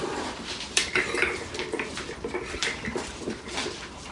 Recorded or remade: remade